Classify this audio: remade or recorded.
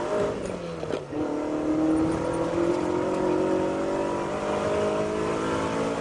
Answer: recorded